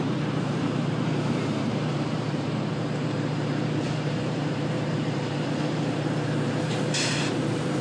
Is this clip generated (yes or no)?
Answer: yes